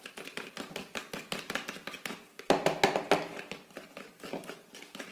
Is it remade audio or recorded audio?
recorded